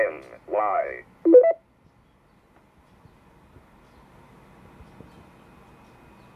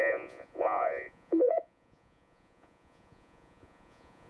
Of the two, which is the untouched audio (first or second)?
first